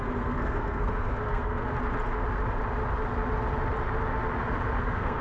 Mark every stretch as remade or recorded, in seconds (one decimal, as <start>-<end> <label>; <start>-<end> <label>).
0.0-1.7 remade; 1.7-4.8 recorded; 4.8-5.2 remade